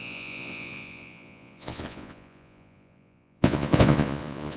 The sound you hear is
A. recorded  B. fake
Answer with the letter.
B